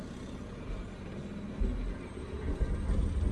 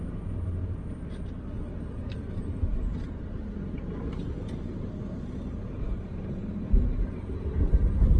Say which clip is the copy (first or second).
second